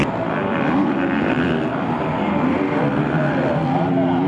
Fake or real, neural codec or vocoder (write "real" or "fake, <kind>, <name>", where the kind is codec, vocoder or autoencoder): real